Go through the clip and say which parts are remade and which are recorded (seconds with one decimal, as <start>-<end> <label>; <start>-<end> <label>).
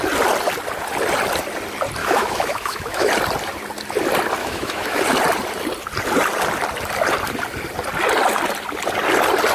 0.0-2.0 recorded; 2.0-3.1 remade; 3.1-4.4 recorded; 4.4-5.0 remade; 5.0-9.5 recorded